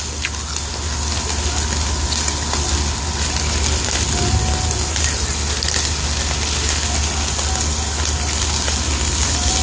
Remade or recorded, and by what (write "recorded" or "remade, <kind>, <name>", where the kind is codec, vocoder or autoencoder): recorded